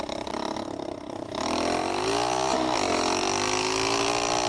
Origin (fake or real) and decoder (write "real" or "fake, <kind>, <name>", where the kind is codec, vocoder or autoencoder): real